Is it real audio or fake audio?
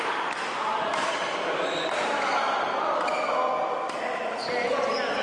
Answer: real